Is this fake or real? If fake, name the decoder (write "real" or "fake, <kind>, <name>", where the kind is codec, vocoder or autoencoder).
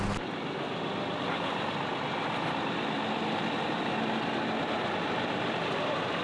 real